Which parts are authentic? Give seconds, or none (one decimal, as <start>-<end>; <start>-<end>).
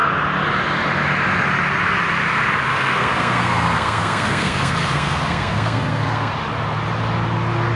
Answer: 0.0-2.7; 6.3-7.8